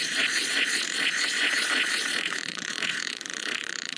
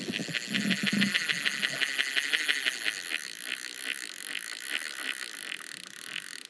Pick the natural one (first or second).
second